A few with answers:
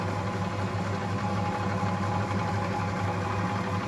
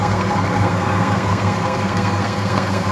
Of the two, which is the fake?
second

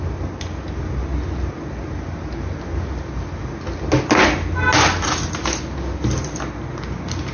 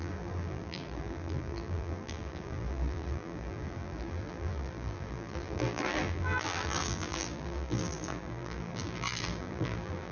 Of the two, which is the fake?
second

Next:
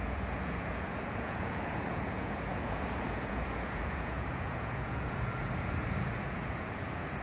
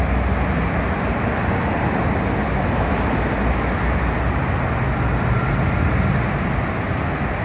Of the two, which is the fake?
first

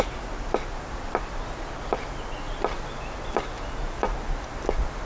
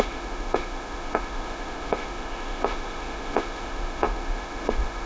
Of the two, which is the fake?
second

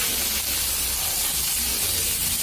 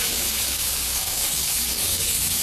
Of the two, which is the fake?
second